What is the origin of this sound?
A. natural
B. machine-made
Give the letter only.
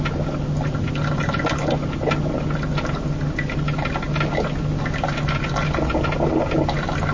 A